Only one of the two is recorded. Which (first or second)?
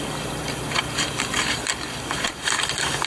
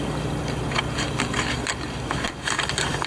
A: second